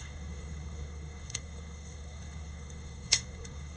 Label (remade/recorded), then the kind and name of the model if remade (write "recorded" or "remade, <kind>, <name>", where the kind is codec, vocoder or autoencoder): remade, codec, SNAC